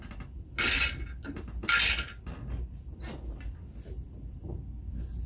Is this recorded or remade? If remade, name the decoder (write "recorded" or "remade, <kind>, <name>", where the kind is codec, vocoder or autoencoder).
recorded